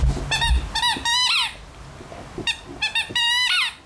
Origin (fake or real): real